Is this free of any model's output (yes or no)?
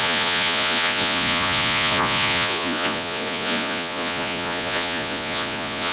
no